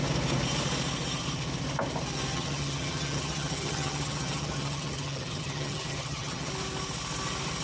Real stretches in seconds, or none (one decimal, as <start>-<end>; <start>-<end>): 0.0-2.3; 6.5-7.6